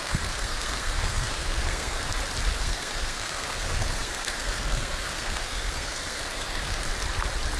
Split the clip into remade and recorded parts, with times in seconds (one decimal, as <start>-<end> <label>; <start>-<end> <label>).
0.0-2.1 remade; 2.1-2.6 recorded; 2.6-6.9 remade; 6.9-7.6 recorded